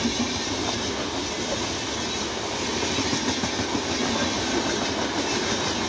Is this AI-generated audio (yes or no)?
no